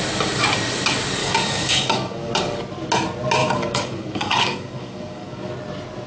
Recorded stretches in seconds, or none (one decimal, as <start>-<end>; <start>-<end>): 0.0-1.2; 2.3-3.4; 5.5-6.1